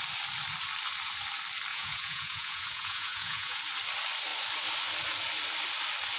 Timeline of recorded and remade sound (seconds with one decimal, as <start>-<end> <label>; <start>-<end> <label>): 0.0-1.7 recorded; 1.7-3.6 remade; 3.6-6.2 recorded